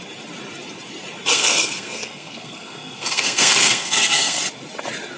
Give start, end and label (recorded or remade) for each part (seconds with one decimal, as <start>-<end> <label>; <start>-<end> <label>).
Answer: 0.0-1.3 recorded; 1.3-4.4 remade; 4.4-5.2 recorded